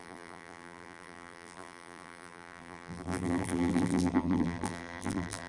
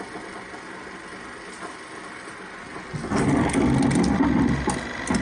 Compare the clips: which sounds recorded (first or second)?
second